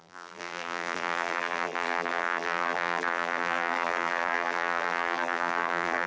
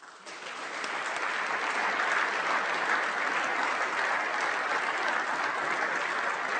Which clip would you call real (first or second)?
second